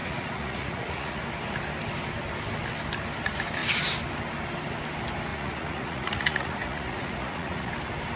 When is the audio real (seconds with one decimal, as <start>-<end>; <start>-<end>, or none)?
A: 1.2-5.3; 7.7-8.2